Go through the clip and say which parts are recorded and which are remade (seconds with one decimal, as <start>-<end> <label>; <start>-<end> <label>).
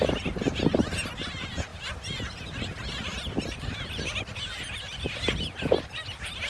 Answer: 0.0-6.5 recorded